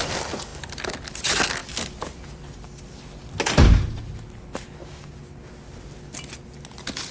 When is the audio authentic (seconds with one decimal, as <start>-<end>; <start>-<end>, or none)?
0.0-4.8; 5.5-7.1